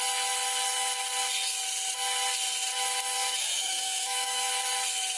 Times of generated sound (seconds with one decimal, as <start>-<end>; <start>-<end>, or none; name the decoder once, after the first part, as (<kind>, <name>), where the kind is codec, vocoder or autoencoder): 3.4-4.5 (autoencoder, DAC-VAE)